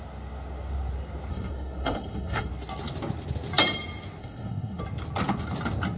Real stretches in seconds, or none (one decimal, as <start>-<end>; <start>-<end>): 0.0-1.3; 2.5-4.2; 4.8-6.0